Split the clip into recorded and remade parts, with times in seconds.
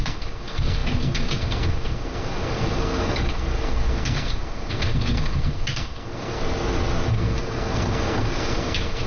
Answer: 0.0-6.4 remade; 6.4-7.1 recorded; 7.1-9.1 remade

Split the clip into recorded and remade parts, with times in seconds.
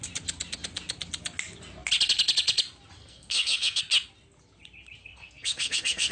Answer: 0.0-3.0 recorded; 3.0-3.8 remade; 3.8-5.0 recorded; 5.0-6.1 remade